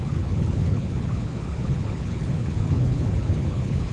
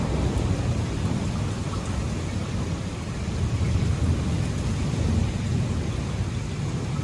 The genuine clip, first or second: second